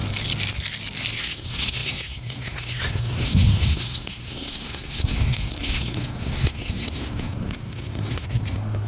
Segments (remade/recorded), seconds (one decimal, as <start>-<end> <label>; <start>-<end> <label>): 0.0-1.2 recorded; 1.2-8.9 remade